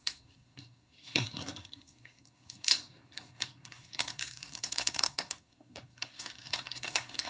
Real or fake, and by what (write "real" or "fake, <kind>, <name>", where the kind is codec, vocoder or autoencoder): fake, codec, SNAC